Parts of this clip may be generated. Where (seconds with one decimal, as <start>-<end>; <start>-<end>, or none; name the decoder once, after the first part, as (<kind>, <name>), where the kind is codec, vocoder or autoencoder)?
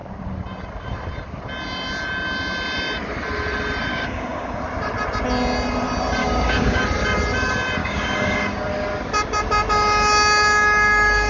3.9-4.6 (codec, DAC); 6.2-6.8; 7.8-8.7